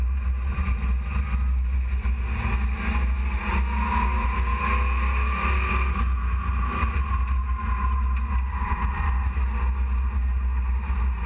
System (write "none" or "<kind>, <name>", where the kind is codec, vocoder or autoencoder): none